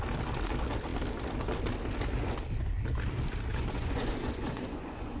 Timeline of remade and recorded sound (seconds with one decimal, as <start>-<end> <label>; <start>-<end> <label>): 0.0-3.5 recorded; 3.5-5.2 remade